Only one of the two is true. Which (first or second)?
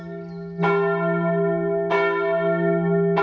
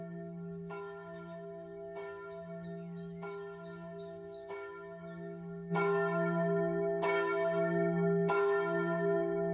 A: first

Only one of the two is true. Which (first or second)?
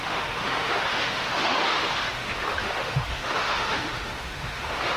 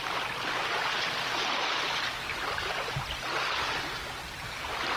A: second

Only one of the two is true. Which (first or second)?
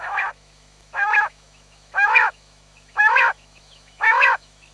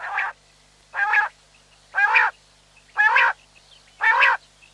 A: second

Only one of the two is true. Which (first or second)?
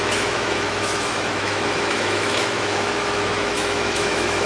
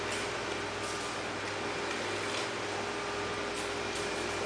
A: second